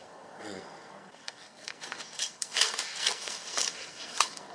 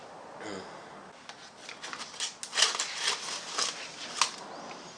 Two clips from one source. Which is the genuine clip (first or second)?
second